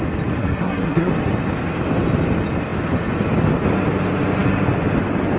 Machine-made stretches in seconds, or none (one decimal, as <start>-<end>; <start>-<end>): 0.4-1.1